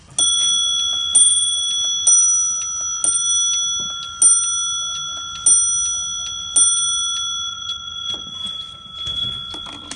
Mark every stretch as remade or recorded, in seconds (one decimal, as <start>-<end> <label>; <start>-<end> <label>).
0.0-7.5 recorded; 7.5-9.3 remade; 9.3-10.0 recorded

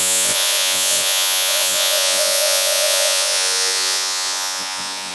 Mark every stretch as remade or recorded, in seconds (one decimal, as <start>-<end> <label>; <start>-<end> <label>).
0.0-5.1 remade